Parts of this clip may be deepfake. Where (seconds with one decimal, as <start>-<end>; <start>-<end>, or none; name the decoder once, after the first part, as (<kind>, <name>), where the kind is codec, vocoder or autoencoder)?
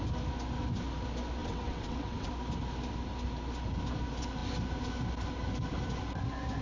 1.4-2.3 (vocoder, WaveNeXt)